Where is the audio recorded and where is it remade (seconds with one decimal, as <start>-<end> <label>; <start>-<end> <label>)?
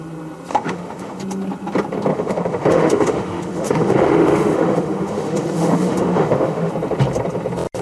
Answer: 0.0-0.5 recorded; 0.5-1.2 remade; 1.2-2.1 recorded; 2.1-6.7 remade; 6.7-7.8 recorded